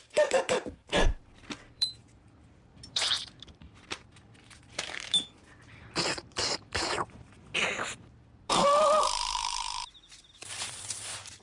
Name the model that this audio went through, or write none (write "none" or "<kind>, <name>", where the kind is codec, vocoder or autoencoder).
vocoder, BigVGAN v2